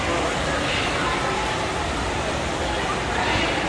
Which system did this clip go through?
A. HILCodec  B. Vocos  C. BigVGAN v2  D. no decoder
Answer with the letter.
D